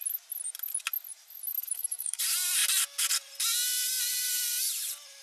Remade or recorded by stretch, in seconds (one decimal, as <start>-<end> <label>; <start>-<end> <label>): 0.0-1.5 recorded; 1.5-2.2 remade; 2.2-5.2 recorded